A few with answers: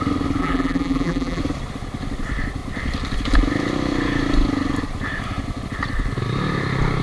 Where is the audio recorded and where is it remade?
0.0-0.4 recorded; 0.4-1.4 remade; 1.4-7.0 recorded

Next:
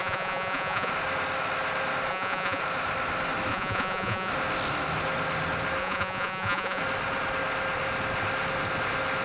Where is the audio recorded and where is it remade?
0.0-0.9 remade; 0.9-2.1 recorded; 2.1-2.6 remade; 2.6-3.5 recorded; 3.5-4.3 remade; 4.3-5.8 recorded; 5.8-6.8 remade; 6.8-9.2 recorded

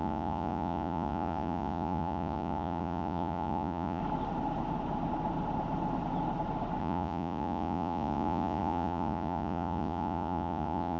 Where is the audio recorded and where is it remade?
0.0-4.0 remade; 4.0-6.8 recorded; 6.8-11.0 remade

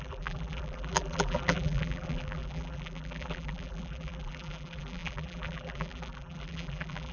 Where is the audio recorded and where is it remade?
0.0-7.1 remade

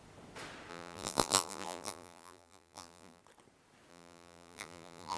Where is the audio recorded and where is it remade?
0.0-0.7 recorded; 0.7-3.2 remade; 3.2-3.9 recorded; 3.9-5.2 remade

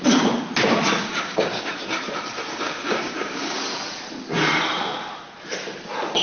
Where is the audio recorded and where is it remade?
0.0-1.0 recorded; 1.0-1.7 remade; 1.7-2.5 recorded; 2.5-3.6 remade; 3.6-6.2 recorded

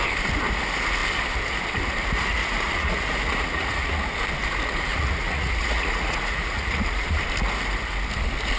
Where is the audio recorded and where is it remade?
0.0-2.4 recorded; 2.4-4.1 remade; 4.1-4.9 recorded; 4.9-7.2 remade; 7.2-8.6 recorded